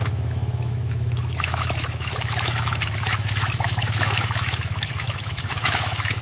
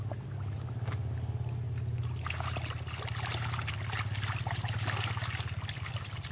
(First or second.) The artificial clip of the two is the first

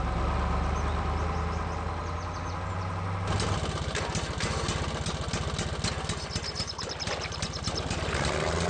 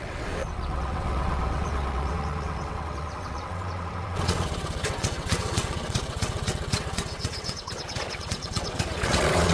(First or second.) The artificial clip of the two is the second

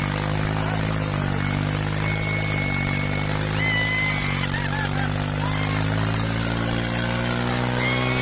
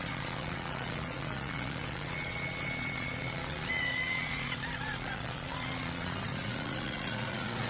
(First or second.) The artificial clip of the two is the second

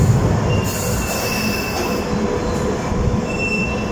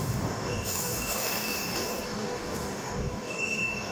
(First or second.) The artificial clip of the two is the second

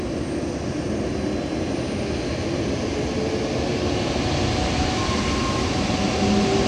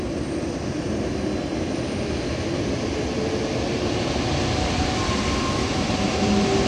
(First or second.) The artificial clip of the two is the second